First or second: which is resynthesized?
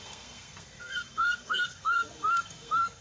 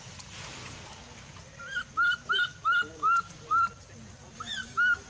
first